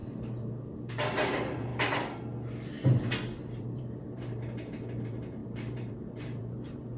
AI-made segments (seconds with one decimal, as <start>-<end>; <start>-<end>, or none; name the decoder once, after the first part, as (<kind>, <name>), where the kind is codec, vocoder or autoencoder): 0.0-1.7 (vocoder, BigVGAN v2); 3.4-7.0